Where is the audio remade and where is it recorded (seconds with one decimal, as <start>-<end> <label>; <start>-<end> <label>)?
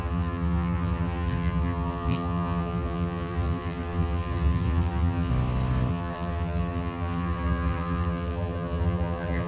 0.0-5.3 remade; 5.3-5.9 recorded; 5.9-9.5 remade